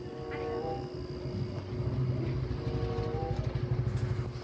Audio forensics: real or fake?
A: real